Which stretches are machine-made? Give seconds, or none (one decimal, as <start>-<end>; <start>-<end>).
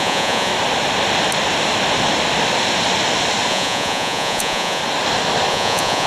0.0-0.5; 3.5-4.8; 5.5-6.1